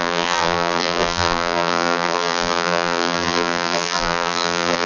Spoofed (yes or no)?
yes